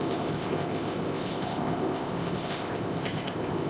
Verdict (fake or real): fake